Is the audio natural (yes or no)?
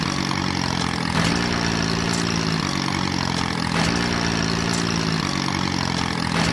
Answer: yes